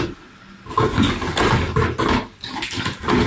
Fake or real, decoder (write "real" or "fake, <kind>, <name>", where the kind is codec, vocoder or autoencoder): real